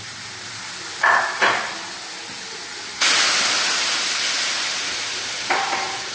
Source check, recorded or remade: recorded